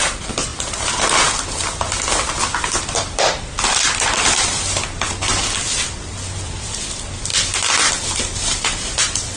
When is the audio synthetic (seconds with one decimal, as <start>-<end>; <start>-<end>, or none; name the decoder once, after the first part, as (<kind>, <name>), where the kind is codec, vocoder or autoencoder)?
0.0-0.5 (vocoder, BigVGAN v2); 3.2-7.3; 7.9-9.4